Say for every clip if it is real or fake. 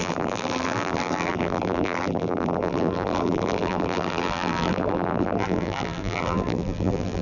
fake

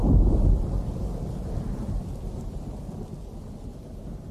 real